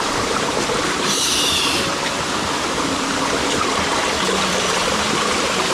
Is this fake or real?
fake